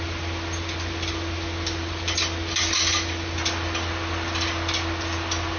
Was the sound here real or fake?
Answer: real